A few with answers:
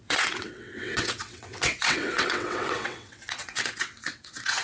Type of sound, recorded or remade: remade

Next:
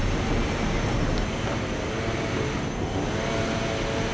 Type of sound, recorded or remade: recorded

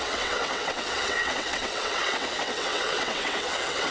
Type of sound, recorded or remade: remade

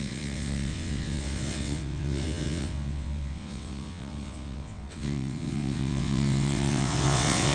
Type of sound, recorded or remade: remade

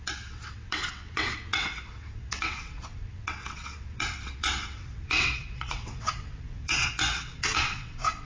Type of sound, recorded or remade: remade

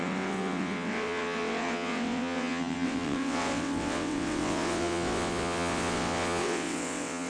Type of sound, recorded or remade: remade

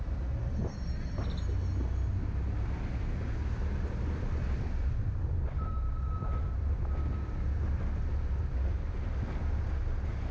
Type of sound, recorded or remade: recorded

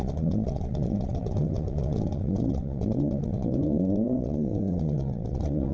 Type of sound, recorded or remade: remade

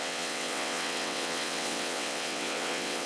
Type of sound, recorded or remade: remade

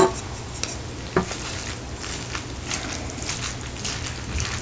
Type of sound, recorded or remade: recorded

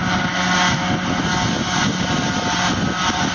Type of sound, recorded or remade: recorded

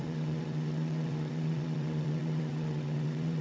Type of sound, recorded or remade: remade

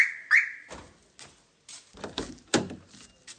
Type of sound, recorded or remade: recorded